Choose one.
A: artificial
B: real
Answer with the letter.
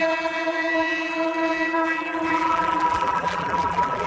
A